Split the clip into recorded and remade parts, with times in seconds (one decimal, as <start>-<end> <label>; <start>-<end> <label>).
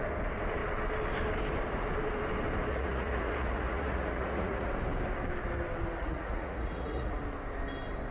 0.0-2.7 recorded; 2.7-4.7 remade; 4.7-6.0 recorded; 6.0-7.2 remade; 7.2-8.1 recorded